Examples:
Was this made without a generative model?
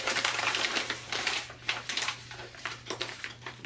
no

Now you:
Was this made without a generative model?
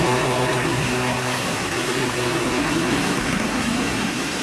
no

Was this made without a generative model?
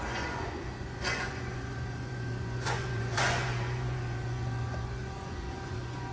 no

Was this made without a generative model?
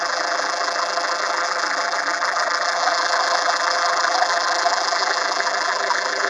no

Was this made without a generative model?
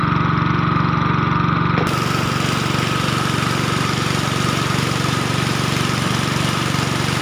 yes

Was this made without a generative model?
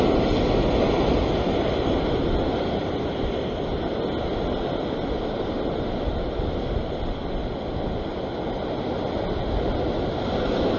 yes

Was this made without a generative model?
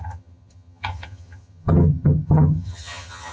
no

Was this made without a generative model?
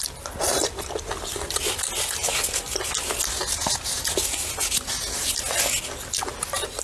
yes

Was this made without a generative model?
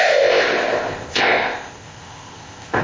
no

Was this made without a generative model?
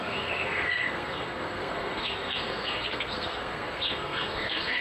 no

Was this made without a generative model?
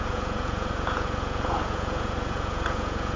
no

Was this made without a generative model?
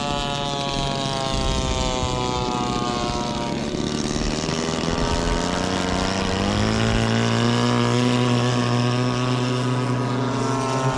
yes